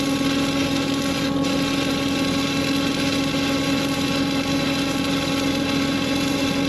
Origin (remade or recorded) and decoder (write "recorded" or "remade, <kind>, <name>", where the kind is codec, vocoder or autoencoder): recorded